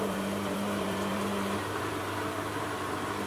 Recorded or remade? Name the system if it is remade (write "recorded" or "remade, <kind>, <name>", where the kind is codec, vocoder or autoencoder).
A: remade, vocoder, BigVGAN v2